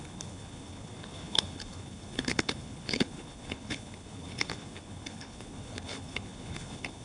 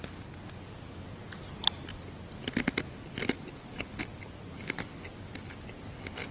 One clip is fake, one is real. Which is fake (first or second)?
first